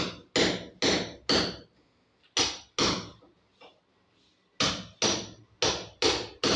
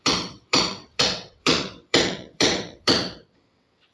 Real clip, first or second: first